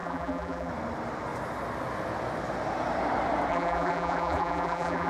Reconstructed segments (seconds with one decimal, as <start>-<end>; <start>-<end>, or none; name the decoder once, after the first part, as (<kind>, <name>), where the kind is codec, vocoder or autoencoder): 0.0-0.7 (vocoder, BigVGAN v2); 3.5-5.1